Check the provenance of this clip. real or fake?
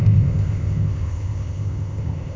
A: fake